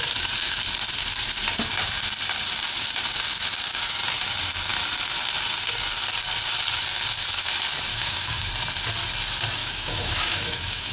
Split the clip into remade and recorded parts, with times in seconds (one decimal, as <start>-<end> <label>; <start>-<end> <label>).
0.0-7.9 recorded; 7.9-8.5 remade; 8.5-9.6 recorded; 9.6-10.9 remade